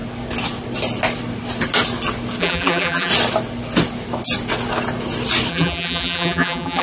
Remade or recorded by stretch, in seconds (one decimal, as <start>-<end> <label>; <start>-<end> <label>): 0.0-2.4 recorded; 2.4-3.1 remade; 3.1-5.5 recorded; 5.5-6.8 remade